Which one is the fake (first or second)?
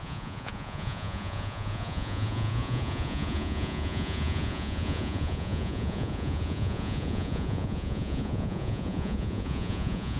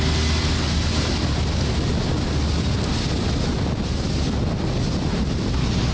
first